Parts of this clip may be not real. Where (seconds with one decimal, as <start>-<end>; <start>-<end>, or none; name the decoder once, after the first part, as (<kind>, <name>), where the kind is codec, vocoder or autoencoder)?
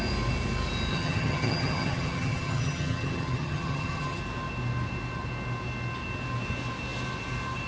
0.9-4.2 (vocoder, HiFi-GAN)